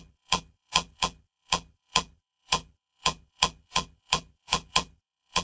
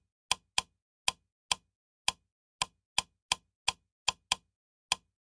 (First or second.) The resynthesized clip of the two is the first